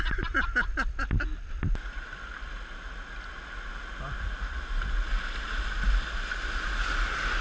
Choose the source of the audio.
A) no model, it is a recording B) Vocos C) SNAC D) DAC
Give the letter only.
A